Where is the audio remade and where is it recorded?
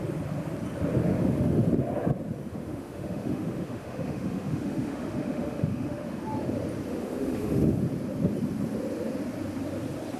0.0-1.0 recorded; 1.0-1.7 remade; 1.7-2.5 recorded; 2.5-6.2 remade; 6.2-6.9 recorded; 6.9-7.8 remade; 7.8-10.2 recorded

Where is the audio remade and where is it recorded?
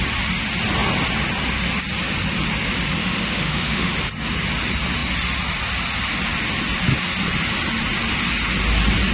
0.0-3.0 recorded; 3.0-3.9 remade; 3.9-9.1 recorded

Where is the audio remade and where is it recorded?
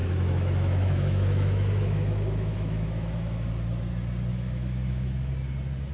0.0-3.5 remade; 3.5-4.3 recorded; 4.3-5.3 remade; 5.3-5.9 recorded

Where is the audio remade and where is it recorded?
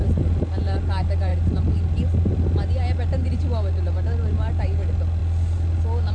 0.0-6.1 recorded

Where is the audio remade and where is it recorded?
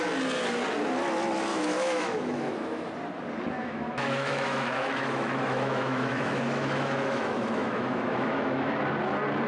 0.0-1.5 recorded; 1.5-2.9 remade; 2.9-3.6 recorded; 3.6-8.8 remade; 8.8-9.5 recorded